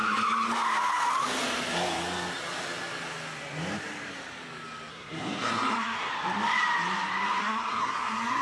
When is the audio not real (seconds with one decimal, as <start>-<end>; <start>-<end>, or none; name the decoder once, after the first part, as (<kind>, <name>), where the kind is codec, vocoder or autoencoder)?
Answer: 4.9-6.1 (codec, SNAC); 7.4-8.4